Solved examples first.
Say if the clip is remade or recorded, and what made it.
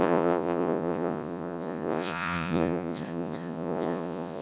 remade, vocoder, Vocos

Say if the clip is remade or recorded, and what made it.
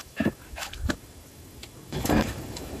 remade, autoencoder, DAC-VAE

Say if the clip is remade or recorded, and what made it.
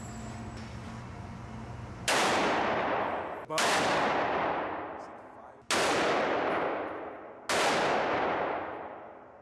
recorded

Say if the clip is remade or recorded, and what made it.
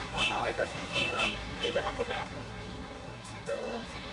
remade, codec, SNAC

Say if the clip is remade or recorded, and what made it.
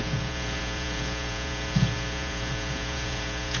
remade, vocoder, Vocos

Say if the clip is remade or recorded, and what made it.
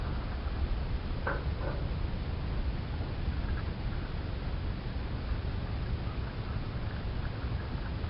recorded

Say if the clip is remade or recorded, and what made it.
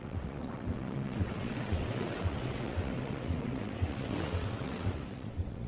remade, vocoder, WaveNeXt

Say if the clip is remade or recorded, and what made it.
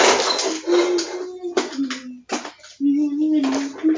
recorded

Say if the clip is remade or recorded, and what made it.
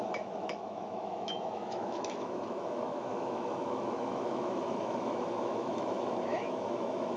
remade, autoencoder, DAC-VAE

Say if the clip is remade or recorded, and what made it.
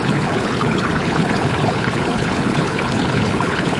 remade, codec, HILCodec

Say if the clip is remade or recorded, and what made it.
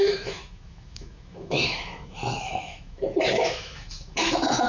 remade, autoencoder, DAC-VAE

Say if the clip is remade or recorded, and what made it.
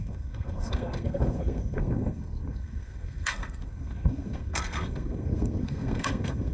remade, codec, SNAC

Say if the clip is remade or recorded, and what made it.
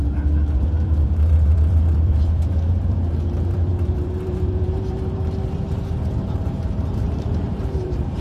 remade, vocoder, BigVGAN v2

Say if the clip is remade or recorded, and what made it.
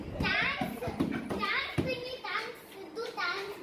recorded